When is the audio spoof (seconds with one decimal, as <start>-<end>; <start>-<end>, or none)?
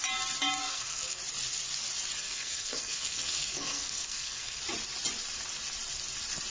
0.6-1.2; 2.2-4.6